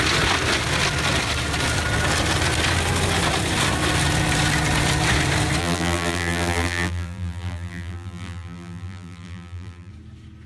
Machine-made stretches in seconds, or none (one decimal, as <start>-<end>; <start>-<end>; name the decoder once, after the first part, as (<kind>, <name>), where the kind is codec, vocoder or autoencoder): 5.6-9.9 (vocoder, BigVGAN v2)

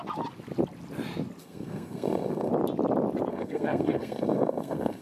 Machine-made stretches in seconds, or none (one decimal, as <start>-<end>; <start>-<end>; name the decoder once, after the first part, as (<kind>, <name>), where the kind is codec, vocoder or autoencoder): 1.4-2.5 (codec, SNAC); 3.3-5.0

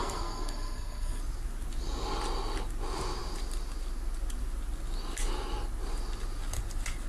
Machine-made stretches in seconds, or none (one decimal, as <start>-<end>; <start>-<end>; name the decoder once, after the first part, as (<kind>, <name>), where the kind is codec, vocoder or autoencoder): 0.0-1.2 (codec, SNAC)

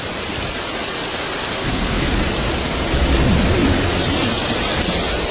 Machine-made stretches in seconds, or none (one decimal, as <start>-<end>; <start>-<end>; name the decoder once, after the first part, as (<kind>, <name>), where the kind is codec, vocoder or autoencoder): 1.5-2.1 (codec, SNAC)

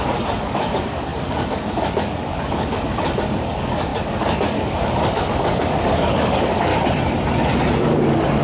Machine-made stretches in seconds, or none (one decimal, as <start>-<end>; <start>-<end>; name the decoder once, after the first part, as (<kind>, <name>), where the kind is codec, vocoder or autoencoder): 0.0-6.7 (codec, DAC); 7.8-8.4

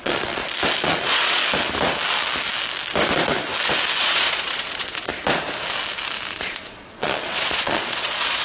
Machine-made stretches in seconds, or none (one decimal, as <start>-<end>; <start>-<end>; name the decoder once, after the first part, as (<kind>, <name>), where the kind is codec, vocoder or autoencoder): 0.0-0.4 (vocoder, Vocos); 0.9-1.4; 4.0-5.1; 6.3-8.4